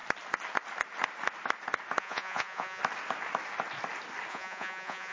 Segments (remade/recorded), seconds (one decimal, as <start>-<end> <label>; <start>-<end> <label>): 0.0-2.0 recorded; 2.0-2.8 remade; 2.8-4.3 recorded; 4.3-5.1 remade